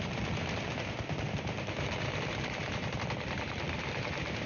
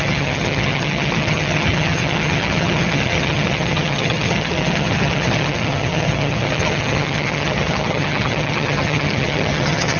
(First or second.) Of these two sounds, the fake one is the second